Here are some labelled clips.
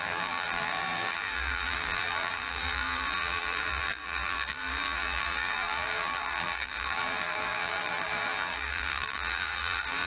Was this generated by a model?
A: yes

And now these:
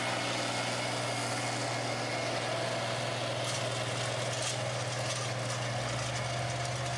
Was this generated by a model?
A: no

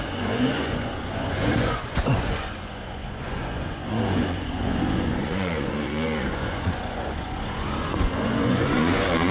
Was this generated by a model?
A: yes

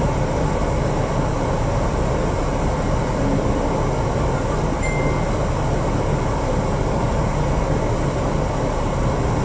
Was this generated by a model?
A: no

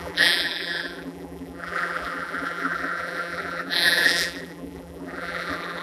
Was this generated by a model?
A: yes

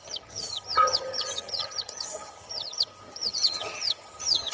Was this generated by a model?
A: yes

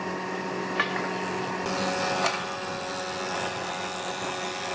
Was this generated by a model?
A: no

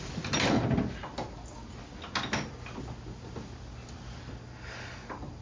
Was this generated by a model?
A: no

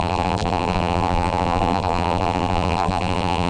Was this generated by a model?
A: yes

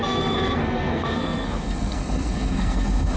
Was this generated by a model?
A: yes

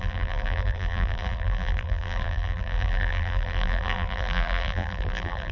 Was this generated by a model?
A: yes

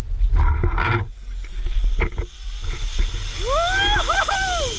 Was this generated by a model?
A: no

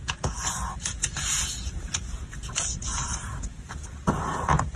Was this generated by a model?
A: yes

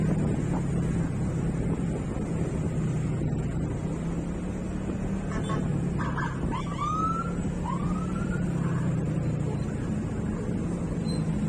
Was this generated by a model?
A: no